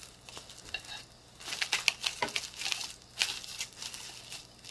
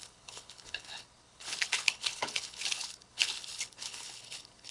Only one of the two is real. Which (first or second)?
first